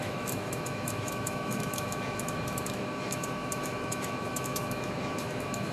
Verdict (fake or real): fake